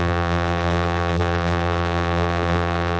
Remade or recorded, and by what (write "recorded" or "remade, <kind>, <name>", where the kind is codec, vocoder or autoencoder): remade, vocoder, BigVGAN v2